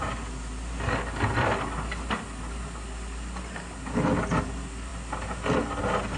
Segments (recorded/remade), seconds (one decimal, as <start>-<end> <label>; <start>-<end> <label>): 0.0-6.2 recorded